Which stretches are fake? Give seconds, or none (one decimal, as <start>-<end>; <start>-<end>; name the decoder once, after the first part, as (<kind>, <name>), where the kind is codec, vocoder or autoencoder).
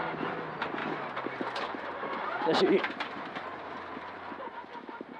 0.8-2.9 (vocoder, BigVGAN v2); 3.5-5.2